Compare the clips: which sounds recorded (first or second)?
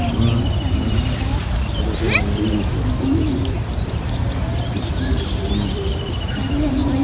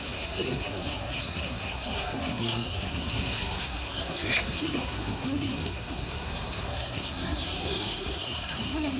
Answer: first